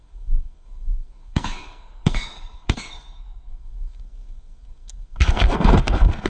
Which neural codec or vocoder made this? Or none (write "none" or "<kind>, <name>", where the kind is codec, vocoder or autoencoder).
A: codec, SNAC